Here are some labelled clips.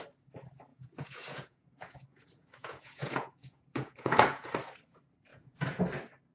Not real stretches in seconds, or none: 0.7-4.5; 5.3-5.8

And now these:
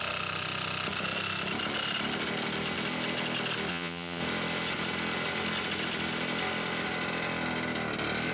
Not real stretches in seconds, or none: 3.7-4.2

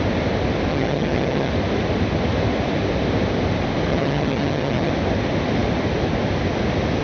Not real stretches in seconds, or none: 0.7-1.5; 3.9-4.9

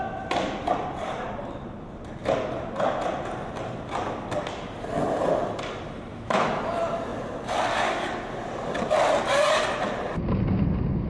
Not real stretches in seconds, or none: 6.1-6.6

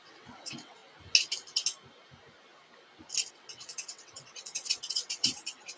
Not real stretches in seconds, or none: 0.0-0.8; 3.3-5.8